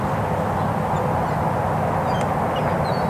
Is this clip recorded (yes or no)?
yes